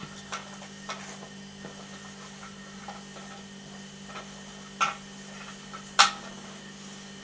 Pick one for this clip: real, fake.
real